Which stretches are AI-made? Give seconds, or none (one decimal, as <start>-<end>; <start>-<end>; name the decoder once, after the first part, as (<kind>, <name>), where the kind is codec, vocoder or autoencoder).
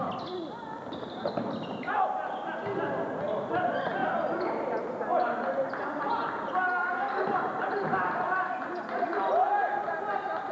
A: none